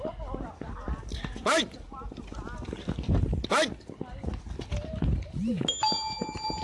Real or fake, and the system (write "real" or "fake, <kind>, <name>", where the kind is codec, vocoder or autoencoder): real